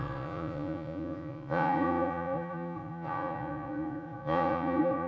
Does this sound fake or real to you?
fake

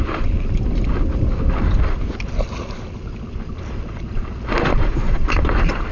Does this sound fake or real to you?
real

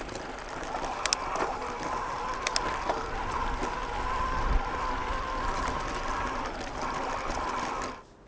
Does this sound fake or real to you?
real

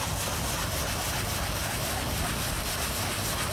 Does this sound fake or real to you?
real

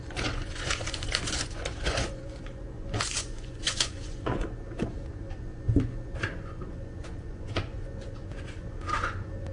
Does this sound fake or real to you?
fake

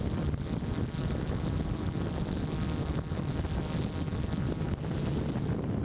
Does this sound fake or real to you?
real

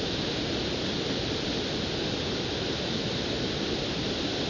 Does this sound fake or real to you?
real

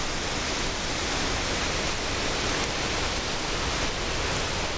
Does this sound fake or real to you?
real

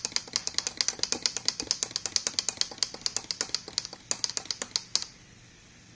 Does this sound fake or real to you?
real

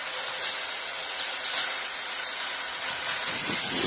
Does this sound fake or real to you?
fake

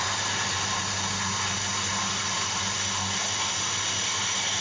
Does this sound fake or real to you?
real